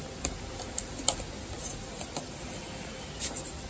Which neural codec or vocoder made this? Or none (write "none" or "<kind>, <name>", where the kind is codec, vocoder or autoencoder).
none